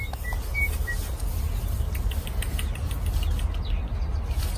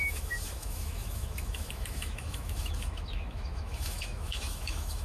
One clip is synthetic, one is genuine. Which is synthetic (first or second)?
second